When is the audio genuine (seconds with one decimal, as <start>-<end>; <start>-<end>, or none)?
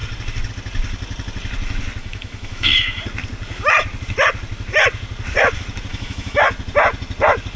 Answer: 0.0-2.0; 3.0-5.9; 6.4-7.6